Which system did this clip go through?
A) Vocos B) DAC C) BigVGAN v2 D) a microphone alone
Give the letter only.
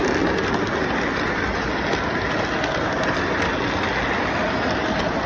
D